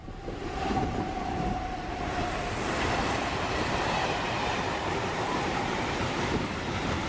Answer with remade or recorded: remade